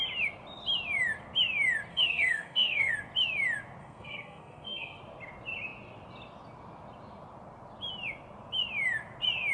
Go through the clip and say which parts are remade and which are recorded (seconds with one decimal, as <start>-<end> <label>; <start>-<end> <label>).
0.0-1.9 recorded; 1.9-2.9 remade; 2.9-3.8 recorded; 3.8-5.0 remade; 5.0-9.5 recorded